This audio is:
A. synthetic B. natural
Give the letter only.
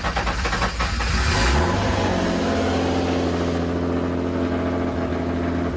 B